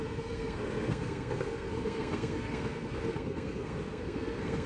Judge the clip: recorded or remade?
remade